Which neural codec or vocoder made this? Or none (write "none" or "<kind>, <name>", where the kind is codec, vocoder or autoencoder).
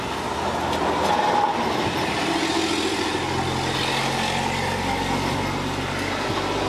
none